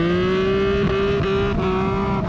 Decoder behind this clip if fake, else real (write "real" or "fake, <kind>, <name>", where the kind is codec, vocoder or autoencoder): real